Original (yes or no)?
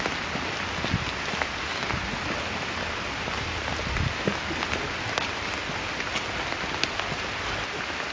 yes